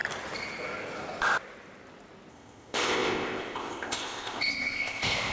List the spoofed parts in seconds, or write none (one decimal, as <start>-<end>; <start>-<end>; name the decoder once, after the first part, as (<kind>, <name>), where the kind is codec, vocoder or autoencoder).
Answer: 2.3-5.3 (codec, ZipCodec)